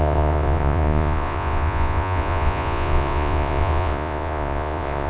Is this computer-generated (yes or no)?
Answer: yes